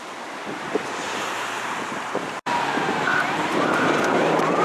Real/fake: fake